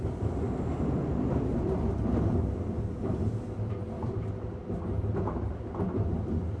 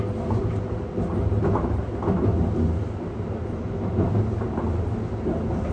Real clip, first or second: second